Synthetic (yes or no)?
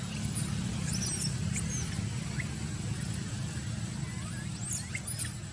no